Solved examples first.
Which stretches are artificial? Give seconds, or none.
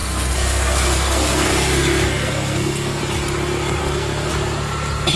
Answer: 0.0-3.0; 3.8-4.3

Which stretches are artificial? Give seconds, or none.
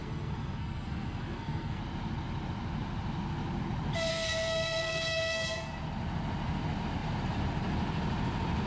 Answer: 0.0-1.8; 4.1-5.7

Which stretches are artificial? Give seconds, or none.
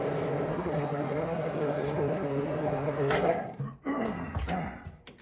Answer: 0.5-3.6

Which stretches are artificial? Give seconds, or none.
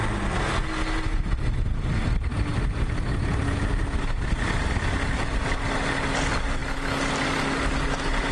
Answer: none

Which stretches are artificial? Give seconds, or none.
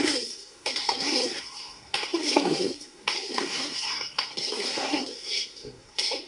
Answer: 0.0-6.3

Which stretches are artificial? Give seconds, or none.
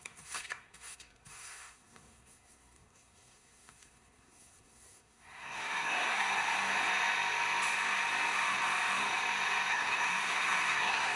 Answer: 0.0-6.3; 9.7-11.2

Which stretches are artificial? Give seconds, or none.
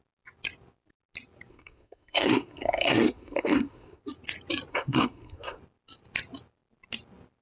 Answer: 1.5-4.0; 4.7-5.6